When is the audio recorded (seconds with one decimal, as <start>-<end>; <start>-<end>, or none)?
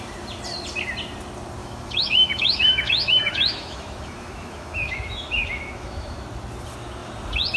0.0-1.6; 6.2-7.6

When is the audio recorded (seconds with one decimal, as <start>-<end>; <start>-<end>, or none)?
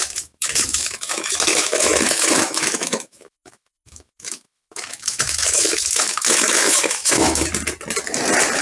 7.5-8.6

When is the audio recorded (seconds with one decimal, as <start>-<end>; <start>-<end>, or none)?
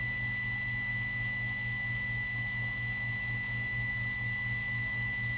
0.0-0.9; 3.9-4.6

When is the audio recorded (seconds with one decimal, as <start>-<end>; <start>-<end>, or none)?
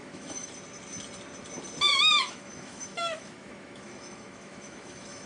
0.5-1.9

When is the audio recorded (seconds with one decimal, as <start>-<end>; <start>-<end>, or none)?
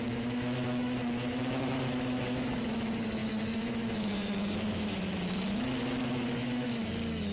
none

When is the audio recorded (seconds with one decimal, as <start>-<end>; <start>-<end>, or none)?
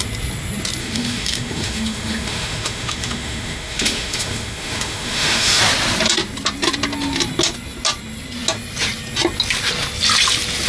0.0-0.8; 5.6-10.7